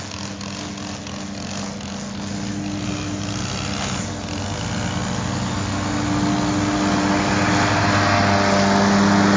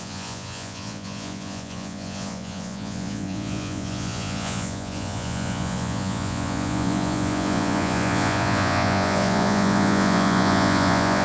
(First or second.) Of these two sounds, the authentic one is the first